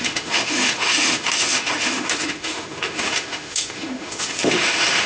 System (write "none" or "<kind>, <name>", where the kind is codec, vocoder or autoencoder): autoencoder, DAC-VAE